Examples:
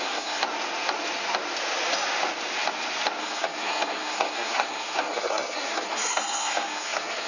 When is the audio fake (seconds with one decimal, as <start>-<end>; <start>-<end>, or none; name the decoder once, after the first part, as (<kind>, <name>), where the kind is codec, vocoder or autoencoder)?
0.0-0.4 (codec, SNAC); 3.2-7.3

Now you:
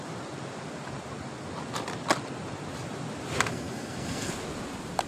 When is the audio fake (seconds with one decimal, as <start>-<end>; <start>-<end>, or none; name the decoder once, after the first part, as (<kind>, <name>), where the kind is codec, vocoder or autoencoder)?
3.5-4.3 (codec, SNAC)

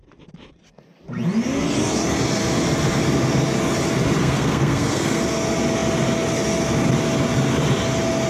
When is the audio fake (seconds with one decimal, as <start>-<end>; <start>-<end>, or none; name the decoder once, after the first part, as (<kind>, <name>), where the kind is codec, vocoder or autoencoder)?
4.2-5.2 (codec, SNAC)

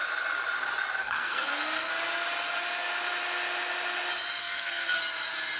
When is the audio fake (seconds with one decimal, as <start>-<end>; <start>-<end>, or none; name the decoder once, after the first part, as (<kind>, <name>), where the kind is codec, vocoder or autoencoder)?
1.0-1.9 (codec, SNAC); 4.4-5.0